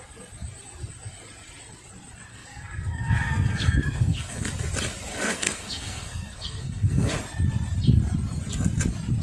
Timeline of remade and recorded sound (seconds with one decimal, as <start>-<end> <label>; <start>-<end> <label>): 0.0-2.3 recorded; 2.3-4.5 remade; 4.5-5.1 recorded; 5.1-7.1 remade; 7.1-9.2 recorded